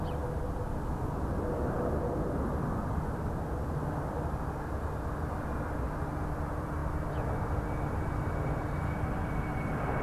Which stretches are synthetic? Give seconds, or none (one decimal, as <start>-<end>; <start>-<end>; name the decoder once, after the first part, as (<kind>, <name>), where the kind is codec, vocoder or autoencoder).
none